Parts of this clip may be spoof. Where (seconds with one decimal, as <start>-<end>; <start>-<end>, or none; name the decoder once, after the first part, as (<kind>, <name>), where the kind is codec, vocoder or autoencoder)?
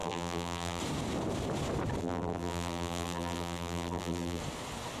0.0-0.8 (vocoder, BigVGAN v2); 2.0-4.4